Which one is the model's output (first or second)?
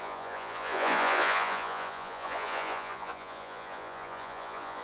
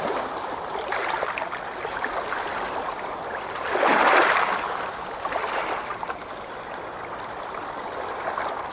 first